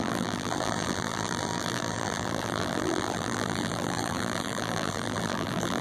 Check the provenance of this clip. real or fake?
fake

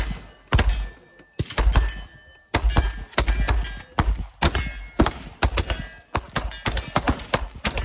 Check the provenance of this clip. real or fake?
real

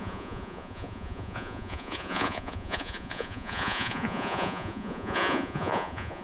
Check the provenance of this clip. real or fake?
fake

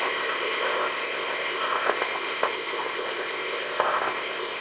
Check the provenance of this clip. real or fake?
fake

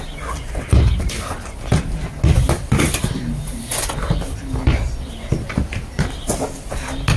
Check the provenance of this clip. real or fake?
real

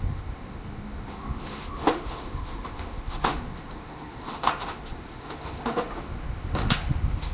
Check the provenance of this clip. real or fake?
fake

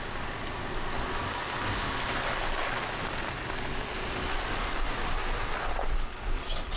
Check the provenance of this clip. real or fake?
real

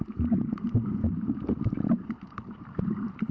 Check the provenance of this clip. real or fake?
fake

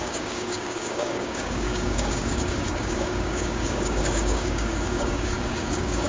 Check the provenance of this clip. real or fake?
fake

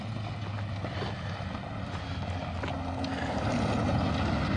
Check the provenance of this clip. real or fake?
real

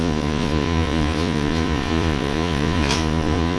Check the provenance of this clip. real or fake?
fake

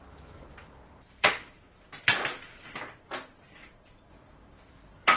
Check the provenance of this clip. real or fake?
fake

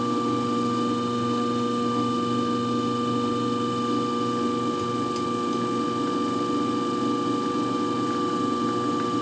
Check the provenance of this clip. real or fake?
real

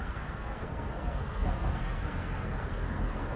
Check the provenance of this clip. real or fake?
fake